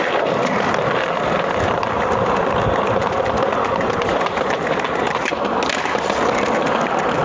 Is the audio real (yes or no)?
yes